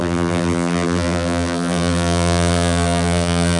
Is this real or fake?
fake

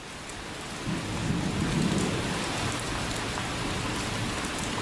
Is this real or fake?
real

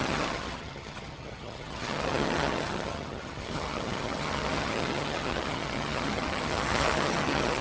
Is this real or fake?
fake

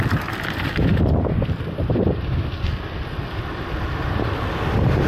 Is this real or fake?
fake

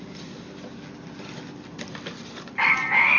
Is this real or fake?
real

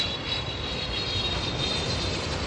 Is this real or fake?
fake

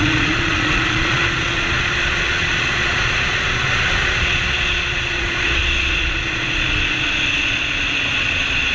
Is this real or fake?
fake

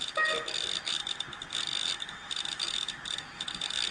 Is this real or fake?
real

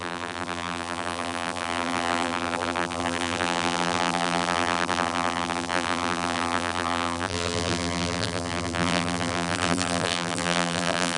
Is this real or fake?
fake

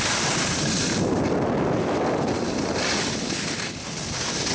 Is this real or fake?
real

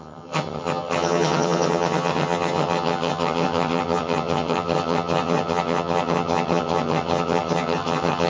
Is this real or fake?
fake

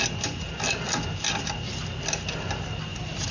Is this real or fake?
real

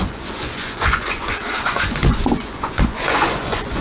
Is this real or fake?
fake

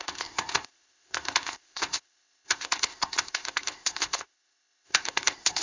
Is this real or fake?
fake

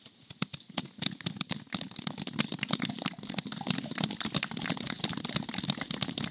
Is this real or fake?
real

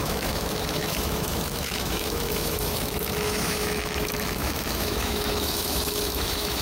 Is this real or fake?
fake